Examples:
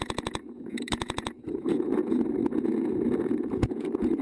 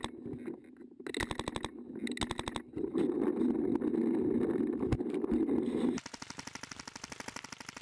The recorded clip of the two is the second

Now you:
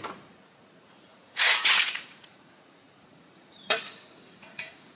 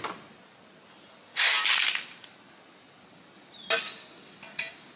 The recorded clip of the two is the second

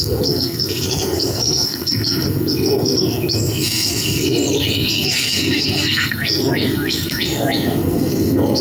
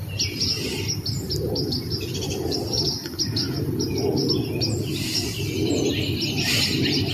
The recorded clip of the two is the second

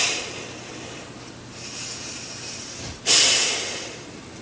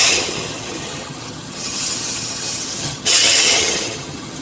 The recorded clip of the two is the first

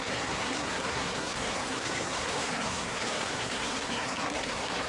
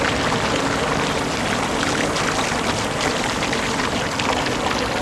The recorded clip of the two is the second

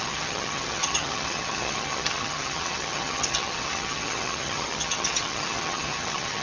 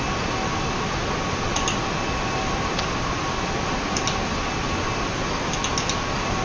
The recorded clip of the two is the second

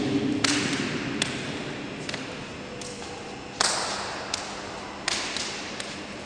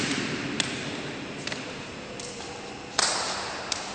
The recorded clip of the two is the first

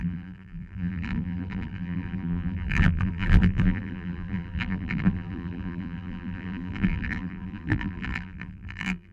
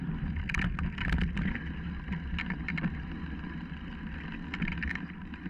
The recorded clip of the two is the second